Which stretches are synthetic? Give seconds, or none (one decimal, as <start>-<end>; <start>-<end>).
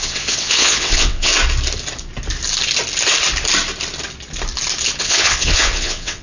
0.0-1.3; 5.0-6.2